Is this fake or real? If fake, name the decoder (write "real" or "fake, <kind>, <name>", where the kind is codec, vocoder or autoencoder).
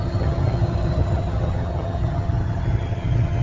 fake, vocoder, HiFi-GAN